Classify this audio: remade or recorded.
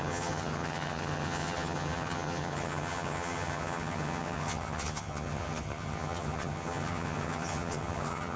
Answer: remade